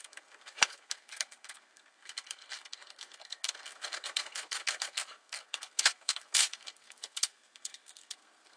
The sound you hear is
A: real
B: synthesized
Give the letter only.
B